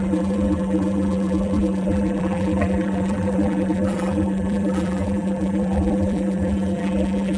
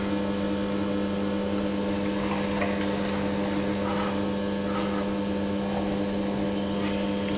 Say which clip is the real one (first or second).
second